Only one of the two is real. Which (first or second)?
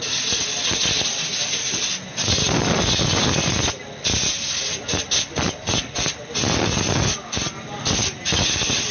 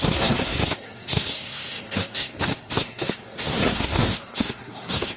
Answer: first